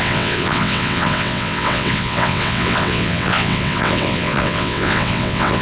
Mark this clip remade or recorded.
remade